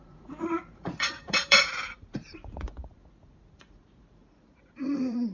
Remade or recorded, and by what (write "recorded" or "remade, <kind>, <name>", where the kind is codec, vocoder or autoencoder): remade, vocoder, Vocos